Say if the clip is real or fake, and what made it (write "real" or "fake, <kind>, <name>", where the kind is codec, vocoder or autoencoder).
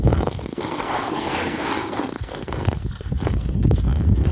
fake, codec, SNAC